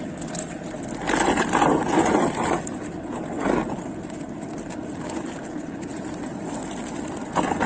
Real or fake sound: real